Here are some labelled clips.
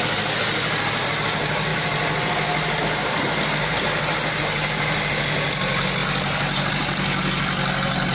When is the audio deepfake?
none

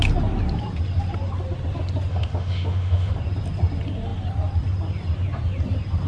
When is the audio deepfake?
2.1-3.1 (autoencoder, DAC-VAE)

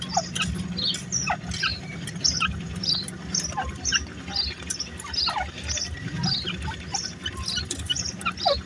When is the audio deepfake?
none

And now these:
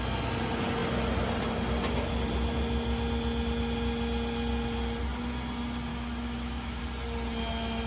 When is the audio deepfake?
5.9-6.8 (autoencoder, DAC-VAE)

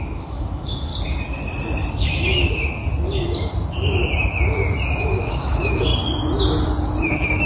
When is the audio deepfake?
0.0-0.9 (autoencoder, DAC-VAE); 1.9-2.8; 5.0-5.9; 7.0-7.5

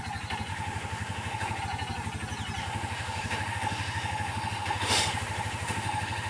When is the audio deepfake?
0.5-1.6 (autoencoder, DAC-VAE); 2.6-6.3

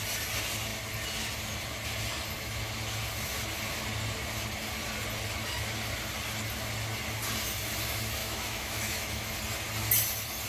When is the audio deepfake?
8.2-9.3 (autoencoder, DAC-VAE)